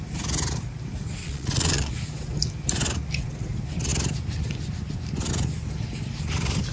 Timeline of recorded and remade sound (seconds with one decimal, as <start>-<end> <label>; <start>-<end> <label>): 0.0-1.2 recorded; 1.2-1.9 remade; 1.9-6.7 recorded